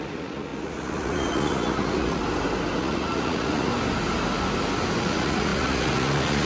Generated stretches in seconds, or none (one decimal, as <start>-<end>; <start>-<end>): 0.0-2.2; 2.8-3.7; 5.0-6.5